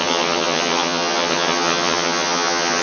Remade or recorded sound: remade